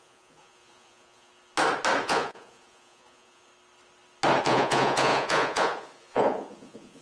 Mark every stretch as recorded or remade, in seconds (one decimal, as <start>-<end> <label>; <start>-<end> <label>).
0.0-1.3 remade; 1.3-2.0 recorded; 2.0-3.5 remade; 3.5-4.4 recorded; 4.4-7.0 remade